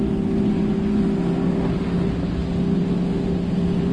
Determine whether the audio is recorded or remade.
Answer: recorded